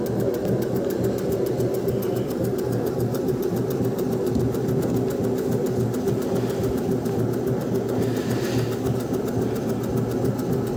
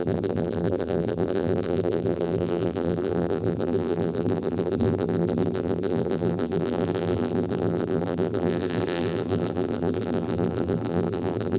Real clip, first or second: first